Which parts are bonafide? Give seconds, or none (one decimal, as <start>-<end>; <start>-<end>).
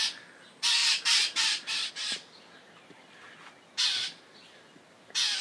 0.0-5.4